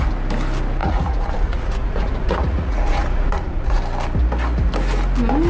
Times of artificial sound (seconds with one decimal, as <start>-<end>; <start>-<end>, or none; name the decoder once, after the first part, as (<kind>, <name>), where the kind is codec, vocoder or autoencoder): 0.8-3.8 (vocoder, Vocos)